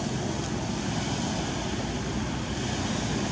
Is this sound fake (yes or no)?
no